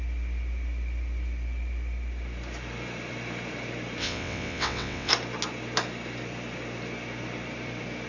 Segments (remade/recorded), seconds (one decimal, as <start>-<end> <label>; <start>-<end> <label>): 0.0-4.0 recorded; 4.0-5.1 remade; 5.1-8.1 recorded